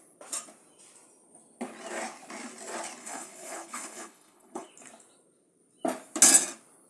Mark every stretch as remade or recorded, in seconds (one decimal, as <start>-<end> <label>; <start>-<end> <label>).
0.0-3.0 recorded; 3.0-4.7 remade; 4.7-6.9 recorded